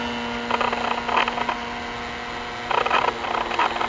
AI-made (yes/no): no